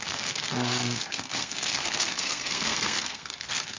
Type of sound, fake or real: fake